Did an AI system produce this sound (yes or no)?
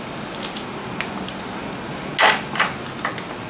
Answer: no